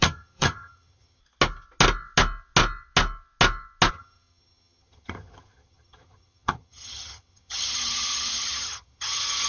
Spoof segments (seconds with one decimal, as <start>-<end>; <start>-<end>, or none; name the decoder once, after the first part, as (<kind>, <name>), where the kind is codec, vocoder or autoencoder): 0.0-1.2 (vocoder, HiFi-GAN); 3.9-9.5